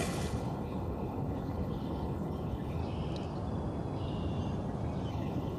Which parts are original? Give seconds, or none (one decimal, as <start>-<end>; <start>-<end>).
2.8-5.1